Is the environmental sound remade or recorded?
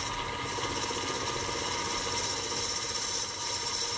recorded